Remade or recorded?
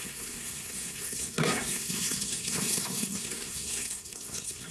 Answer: remade